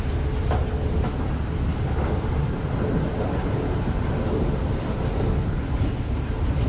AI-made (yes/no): no